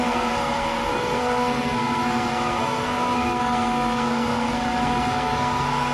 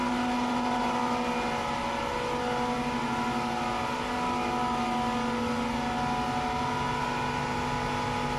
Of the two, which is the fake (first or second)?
first